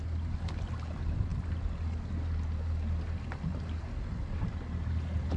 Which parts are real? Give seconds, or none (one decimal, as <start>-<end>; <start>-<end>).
0.0-5.4